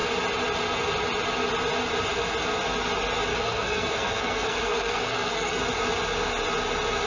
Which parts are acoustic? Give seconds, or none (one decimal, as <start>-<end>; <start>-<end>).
0.0-3.3; 5.6-7.1